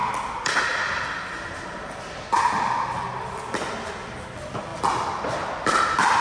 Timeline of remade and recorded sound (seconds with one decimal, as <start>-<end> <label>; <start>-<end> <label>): 0.0-4.7 recorded; 4.7-5.8 remade; 5.8-6.2 recorded